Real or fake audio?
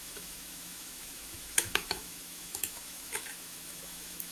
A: fake